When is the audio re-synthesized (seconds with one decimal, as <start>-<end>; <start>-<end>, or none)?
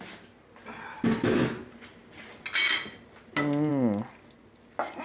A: none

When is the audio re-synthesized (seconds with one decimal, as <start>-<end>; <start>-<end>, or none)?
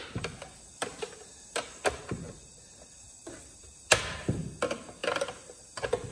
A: none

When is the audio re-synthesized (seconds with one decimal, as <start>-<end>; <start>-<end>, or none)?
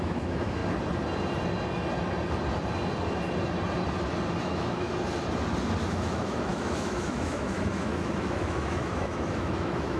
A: 0.0-0.6; 4.4-4.9; 5.8-10.0